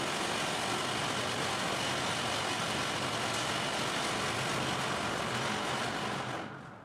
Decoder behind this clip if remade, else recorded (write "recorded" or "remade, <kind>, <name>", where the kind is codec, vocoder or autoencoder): recorded